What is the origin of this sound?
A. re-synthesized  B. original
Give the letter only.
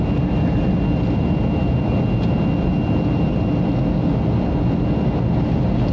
B